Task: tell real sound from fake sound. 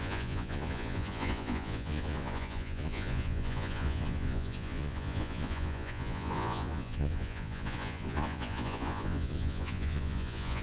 fake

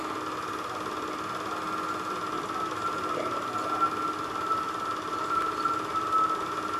real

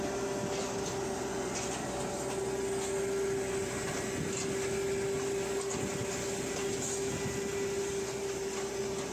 real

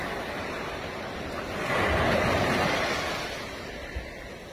real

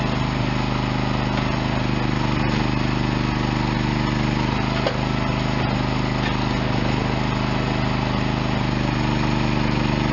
real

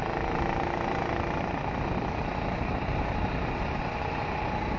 real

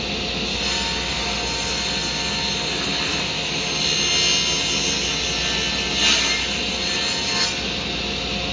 real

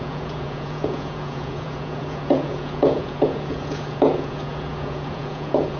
fake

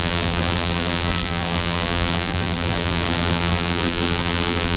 fake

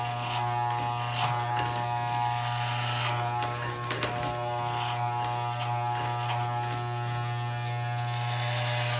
real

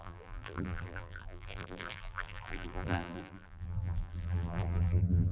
fake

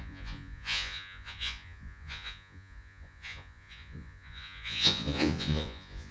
fake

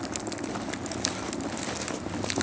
real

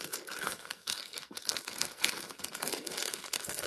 fake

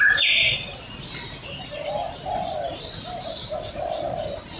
real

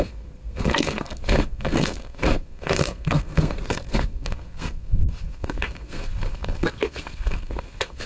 fake